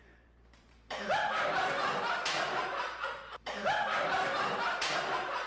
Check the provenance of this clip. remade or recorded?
remade